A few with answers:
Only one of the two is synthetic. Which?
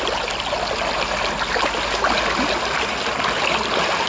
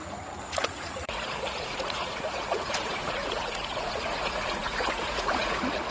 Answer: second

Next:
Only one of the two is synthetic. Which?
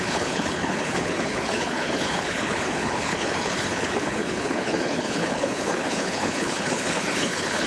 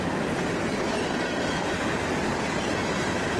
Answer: first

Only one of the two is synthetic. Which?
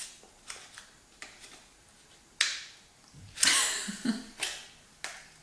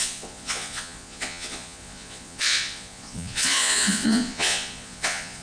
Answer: second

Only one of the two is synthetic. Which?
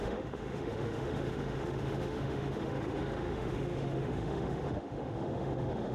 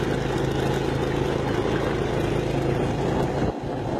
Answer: first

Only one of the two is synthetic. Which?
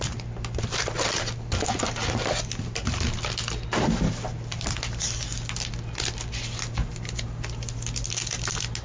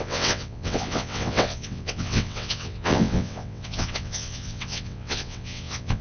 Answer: second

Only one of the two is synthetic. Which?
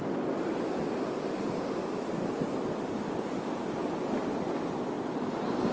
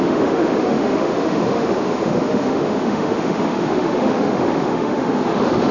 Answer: second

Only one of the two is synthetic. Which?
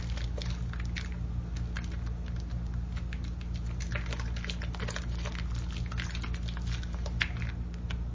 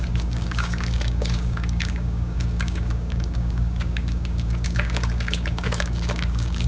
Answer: second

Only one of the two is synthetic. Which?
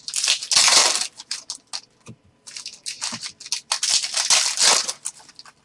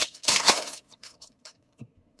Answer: second